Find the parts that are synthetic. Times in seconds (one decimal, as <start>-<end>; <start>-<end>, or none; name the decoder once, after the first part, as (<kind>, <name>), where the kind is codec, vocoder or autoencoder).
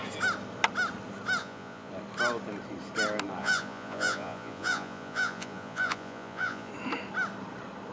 1.4-1.9 (vocoder, Vocos); 3.4-6.7